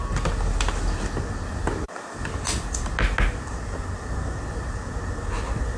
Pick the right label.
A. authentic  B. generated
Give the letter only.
A